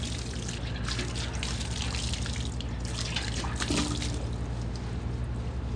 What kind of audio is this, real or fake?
real